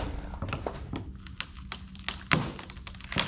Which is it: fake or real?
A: real